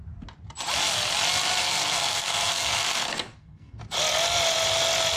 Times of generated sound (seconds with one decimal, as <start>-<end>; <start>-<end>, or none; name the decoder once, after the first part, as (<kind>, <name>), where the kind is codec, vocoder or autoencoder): 1.6-3.8 (codec, SNAC)